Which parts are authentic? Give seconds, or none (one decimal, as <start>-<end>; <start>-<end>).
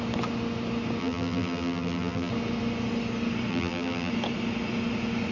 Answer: 0.0-1.0; 2.3-3.5; 4.1-5.3